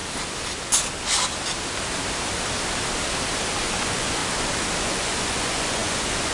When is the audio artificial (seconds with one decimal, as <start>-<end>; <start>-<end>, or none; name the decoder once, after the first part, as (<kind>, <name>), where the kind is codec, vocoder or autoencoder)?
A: 3.8-4.2 (vocoder, Vocos); 4.8-6.3